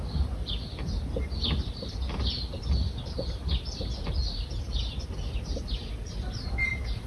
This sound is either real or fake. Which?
real